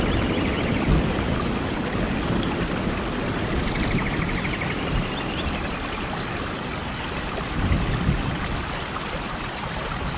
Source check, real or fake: real